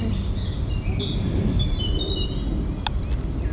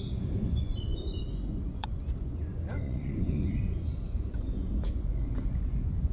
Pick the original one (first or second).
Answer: first